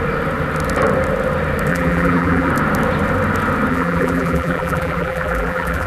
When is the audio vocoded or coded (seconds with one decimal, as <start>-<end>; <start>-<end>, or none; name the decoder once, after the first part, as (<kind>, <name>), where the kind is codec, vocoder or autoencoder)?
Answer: 1.7-2.5 (vocoder, BigVGAN v2); 3.7-5.9